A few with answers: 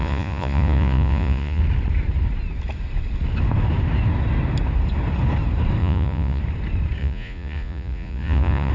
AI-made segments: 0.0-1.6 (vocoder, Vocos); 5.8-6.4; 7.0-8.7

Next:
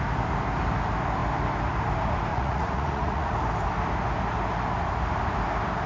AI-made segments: 2.3-3.3 (vocoder, Vocos)

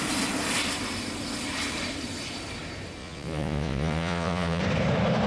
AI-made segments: 3.0-4.6 (vocoder, Vocos)

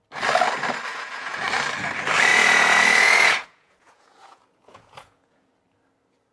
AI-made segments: 0.9-1.4 (vocoder, Vocos); 2.3-5.5

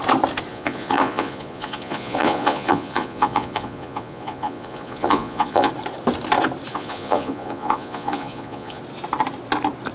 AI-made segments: 0.5-5.7 (vocoder, Vocos); 6.7-8.8

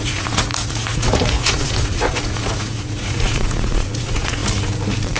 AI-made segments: 0.0-4.4 (vocoder, Vocos)